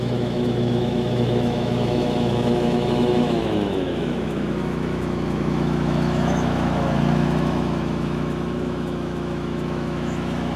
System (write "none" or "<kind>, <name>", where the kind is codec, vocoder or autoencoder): autoencoder, DAC-VAE